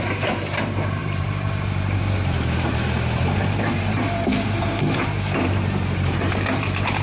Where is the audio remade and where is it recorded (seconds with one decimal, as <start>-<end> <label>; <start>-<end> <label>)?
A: 0.0-7.0 remade